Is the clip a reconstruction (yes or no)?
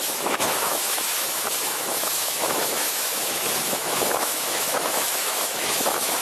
yes